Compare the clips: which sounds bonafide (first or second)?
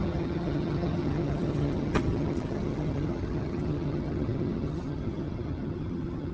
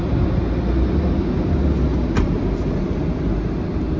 second